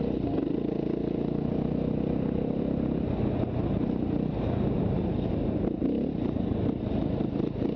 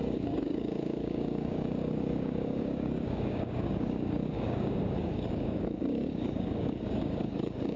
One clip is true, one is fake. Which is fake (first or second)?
second